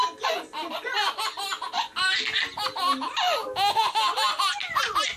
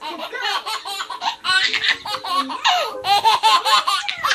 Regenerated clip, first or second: second